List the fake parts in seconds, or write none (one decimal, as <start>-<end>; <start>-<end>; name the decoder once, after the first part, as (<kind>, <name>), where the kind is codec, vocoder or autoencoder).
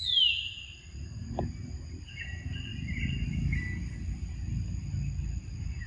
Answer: none